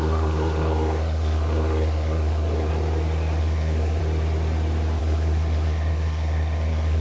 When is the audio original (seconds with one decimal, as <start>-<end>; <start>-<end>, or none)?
2.7-3.4; 4.0-5.0